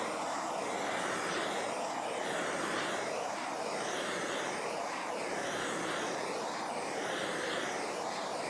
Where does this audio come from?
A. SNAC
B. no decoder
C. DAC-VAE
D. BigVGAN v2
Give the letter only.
D